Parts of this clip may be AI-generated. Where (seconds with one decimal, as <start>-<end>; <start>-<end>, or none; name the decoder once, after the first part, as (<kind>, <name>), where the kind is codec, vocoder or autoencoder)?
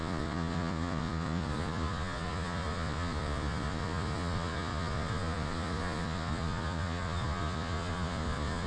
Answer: 0.0-8.7 (vocoder, Vocos)